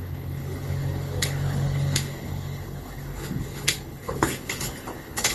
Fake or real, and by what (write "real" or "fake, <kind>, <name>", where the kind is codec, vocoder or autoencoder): fake, codec, HILCodec